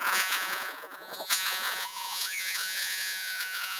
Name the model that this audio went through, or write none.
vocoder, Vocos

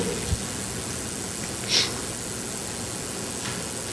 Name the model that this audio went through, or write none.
none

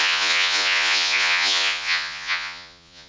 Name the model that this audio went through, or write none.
vocoder, Vocos